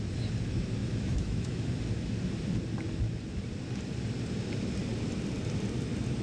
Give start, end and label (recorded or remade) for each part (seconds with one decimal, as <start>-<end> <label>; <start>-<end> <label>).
0.0-0.8 recorded; 0.8-1.8 remade; 1.8-6.2 recorded